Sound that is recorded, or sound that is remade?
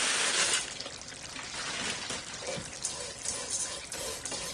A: recorded